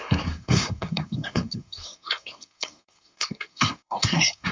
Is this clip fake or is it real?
fake